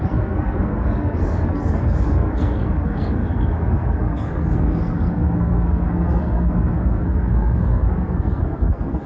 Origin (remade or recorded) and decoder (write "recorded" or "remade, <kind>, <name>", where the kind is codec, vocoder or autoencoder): remade, codec, SNAC